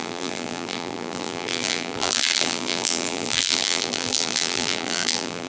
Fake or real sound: fake